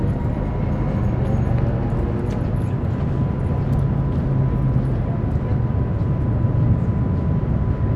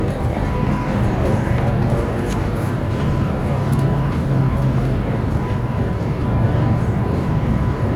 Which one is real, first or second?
first